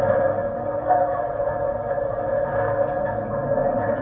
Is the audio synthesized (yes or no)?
no